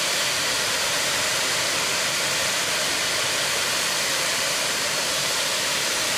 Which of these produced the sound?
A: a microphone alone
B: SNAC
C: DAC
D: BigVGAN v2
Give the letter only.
D